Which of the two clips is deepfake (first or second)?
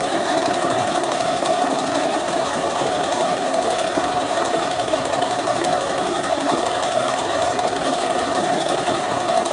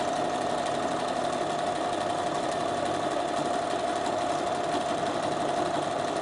first